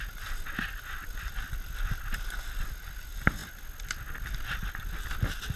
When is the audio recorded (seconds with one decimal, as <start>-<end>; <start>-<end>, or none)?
0.0-5.6